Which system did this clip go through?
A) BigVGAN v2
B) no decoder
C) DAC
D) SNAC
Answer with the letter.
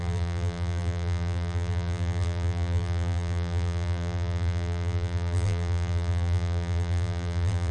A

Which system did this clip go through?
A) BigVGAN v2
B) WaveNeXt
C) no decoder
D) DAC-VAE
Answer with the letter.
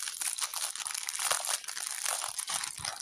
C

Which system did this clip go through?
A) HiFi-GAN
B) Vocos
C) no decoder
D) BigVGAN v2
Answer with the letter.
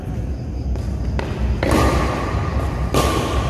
C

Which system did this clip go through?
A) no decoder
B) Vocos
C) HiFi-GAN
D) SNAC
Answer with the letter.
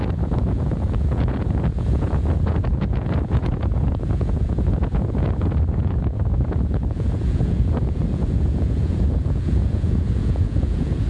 B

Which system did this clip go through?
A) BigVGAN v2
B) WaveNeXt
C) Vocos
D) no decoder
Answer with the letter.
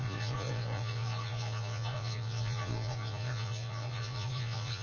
C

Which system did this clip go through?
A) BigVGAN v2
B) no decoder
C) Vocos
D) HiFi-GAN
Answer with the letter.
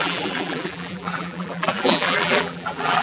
A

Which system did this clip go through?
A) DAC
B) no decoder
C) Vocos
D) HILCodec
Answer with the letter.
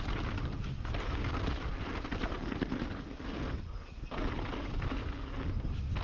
B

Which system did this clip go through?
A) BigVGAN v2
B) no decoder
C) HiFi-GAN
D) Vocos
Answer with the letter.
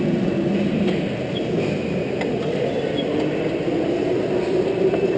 B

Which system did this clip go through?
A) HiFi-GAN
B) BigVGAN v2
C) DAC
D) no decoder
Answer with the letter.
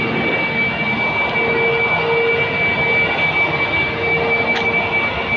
D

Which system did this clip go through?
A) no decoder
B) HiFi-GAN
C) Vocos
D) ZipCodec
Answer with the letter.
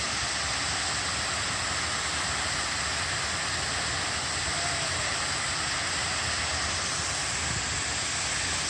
A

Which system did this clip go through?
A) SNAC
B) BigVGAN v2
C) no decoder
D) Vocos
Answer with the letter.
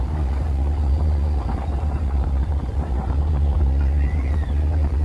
D